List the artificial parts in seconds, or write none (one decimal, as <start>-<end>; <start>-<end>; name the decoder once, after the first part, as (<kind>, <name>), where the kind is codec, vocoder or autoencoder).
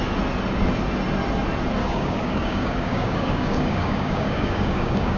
1.8-5.2 (codec, DAC)